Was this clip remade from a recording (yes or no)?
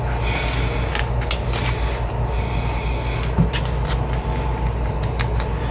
no